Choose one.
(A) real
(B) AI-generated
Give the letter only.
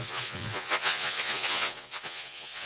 B